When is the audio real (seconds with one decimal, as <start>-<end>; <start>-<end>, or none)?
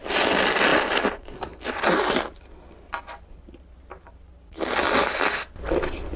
0.0-6.2